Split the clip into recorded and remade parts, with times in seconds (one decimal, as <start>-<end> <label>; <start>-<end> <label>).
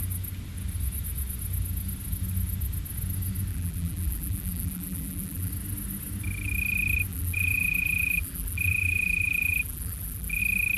0.0-3.5 recorded; 3.5-5.5 remade; 5.5-7.1 recorded; 7.1-10.4 remade; 10.4-10.8 recorded